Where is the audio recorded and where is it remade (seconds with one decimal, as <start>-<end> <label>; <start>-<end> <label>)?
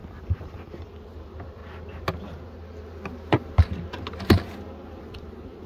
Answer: 0.0-1.6 remade; 1.6-5.0 recorded; 5.0-5.7 remade